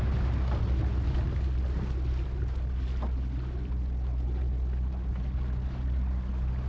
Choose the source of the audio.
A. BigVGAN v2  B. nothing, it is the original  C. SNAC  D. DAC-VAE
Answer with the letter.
B